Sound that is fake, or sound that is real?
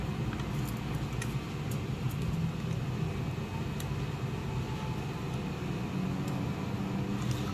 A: real